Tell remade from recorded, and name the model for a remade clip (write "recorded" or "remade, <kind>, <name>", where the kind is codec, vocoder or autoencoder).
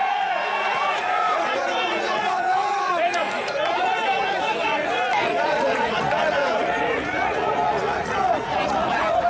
remade, vocoder, Vocos